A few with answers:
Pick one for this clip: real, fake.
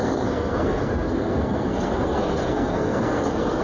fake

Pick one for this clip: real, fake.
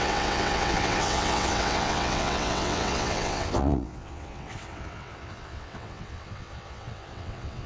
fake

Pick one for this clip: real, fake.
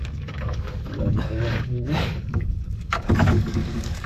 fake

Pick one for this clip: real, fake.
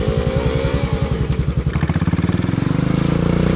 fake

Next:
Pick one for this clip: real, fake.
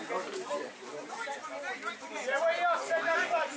real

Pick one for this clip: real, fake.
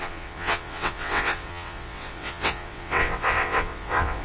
fake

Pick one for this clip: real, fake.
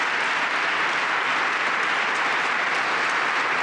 real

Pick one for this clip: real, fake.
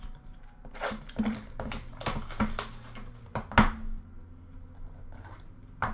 real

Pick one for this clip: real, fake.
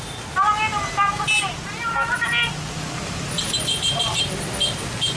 real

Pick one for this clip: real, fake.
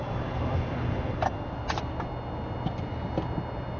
real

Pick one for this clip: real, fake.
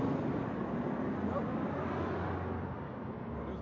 real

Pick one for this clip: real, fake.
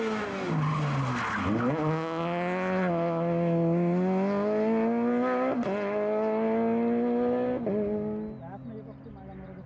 real